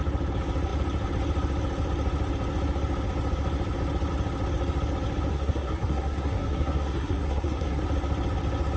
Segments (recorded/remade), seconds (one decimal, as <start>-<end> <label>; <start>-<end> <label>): 0.0-5.3 recorded; 5.3-7.8 remade; 7.8-8.8 recorded